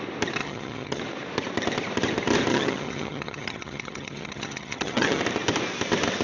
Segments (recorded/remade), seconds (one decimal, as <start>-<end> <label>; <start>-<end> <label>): 0.0-0.4 recorded; 0.4-1.0 remade; 1.0-2.5 recorded; 2.5-5.2 remade; 5.2-6.2 recorded